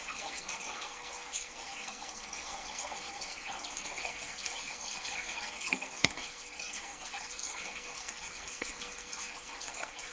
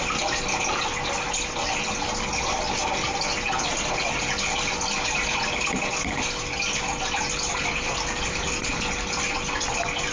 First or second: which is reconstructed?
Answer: first